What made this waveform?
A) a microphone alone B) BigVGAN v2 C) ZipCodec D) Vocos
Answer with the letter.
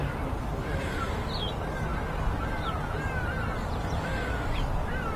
A